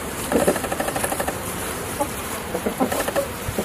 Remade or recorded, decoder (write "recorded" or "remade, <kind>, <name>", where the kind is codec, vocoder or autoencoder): remade, vocoder, BigVGAN v2